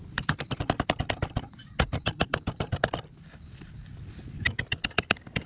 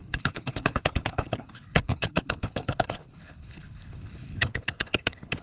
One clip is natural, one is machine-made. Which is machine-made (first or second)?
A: second